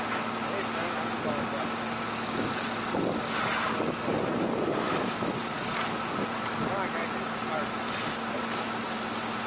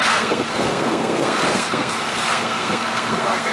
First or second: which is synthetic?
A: second